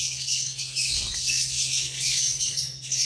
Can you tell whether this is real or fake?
fake